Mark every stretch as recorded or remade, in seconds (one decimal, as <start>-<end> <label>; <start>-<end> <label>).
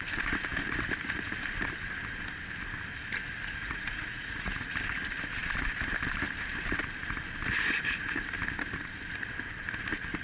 0.0-3.6 recorded; 3.6-4.5 remade; 4.5-10.2 recorded